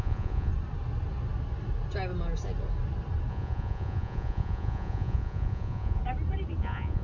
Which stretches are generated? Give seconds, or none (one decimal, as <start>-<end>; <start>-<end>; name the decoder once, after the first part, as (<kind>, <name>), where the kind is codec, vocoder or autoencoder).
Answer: 0.0-0.5 (vocoder, Vocos); 3.3-6.0; 6.6-7.0